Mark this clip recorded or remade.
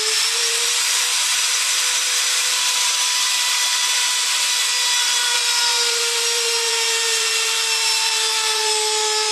remade